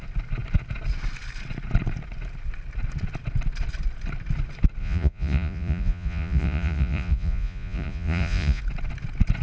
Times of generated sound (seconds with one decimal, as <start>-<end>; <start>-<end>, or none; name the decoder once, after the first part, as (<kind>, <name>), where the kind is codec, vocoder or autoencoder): 4.8-8.6 (vocoder, Vocos)